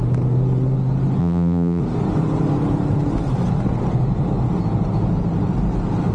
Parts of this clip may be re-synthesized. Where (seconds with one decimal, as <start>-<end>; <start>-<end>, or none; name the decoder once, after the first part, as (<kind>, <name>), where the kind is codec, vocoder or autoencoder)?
1.2-1.8 (vocoder, BigVGAN v2)